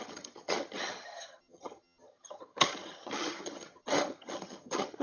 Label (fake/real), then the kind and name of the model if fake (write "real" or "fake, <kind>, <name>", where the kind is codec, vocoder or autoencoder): fake, vocoder, HiFi-GAN